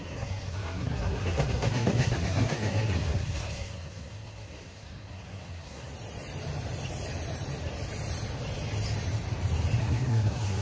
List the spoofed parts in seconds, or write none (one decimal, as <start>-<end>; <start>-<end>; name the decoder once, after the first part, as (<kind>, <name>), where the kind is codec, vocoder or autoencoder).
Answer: 0.0-5.9 (codec, SNAC); 9.8-10.6